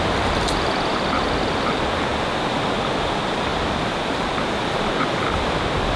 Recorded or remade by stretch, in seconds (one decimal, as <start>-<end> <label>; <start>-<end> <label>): 0.0-2.1 remade; 2.1-2.9 recorded; 2.9-3.5 remade; 3.5-5.0 recorded; 5.0-6.0 remade